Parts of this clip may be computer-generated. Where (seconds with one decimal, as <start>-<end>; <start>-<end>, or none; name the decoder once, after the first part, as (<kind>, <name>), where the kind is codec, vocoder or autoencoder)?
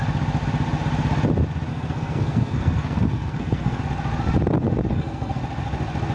1.7-3.8 (codec, SNAC); 4.9-5.4